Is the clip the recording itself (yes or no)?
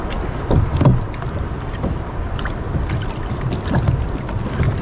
yes